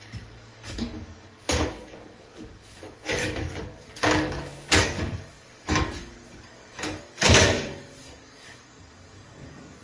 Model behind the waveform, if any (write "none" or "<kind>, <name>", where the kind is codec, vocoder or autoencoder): codec, DAC